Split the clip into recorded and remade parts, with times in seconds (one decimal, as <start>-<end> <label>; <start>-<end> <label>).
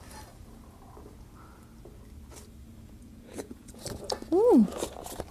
0.0-3.0 recorded; 3.0-3.8 remade; 3.8-5.3 recorded